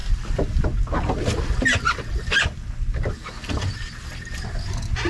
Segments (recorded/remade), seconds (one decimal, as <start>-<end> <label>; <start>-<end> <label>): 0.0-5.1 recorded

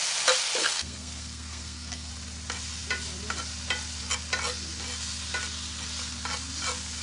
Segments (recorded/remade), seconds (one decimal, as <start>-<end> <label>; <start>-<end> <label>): 0.0-0.6 recorded; 0.6-2.1 remade; 2.1-7.0 recorded

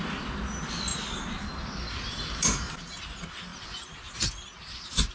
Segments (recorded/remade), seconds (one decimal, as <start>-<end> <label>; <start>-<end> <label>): 0.0-5.1 recorded

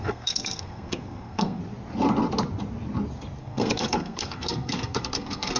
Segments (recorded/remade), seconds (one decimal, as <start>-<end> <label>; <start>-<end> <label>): 0.0-1.6 remade; 1.6-3.4 recorded; 3.4-5.6 remade

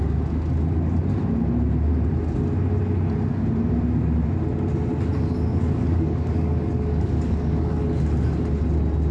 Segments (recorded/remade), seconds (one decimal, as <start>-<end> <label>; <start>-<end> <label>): 0.0-5.5 recorded; 5.5-7.8 remade; 7.8-9.1 recorded

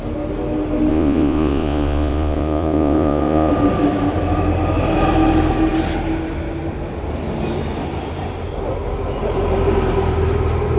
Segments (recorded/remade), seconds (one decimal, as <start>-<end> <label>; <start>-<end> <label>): 0.0-0.9 recorded; 0.9-3.5 remade; 3.5-10.8 recorded

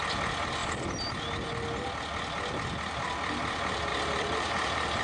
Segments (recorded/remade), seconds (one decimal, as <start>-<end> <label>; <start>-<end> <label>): 0.0-3.9 recorded; 3.9-5.0 remade